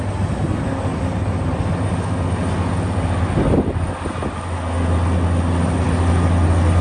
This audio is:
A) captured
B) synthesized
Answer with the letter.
A